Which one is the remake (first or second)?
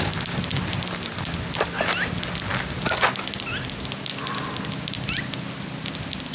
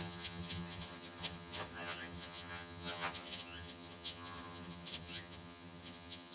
second